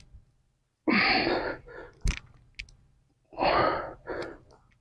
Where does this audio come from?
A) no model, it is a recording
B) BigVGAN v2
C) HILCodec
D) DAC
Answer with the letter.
A